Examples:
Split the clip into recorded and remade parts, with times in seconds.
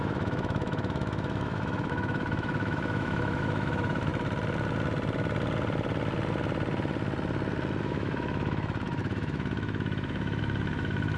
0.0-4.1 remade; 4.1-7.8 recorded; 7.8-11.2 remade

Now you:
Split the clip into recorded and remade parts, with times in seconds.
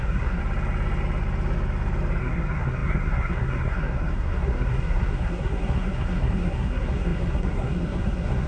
0.0-0.4 remade; 0.4-2.2 recorded; 2.2-8.5 remade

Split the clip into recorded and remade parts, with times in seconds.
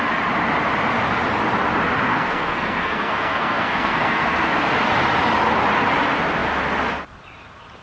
0.0-2.1 recorded; 2.1-4.5 remade; 4.5-7.8 recorded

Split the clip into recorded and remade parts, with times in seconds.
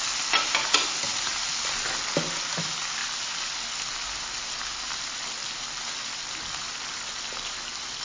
0.0-8.0 recorded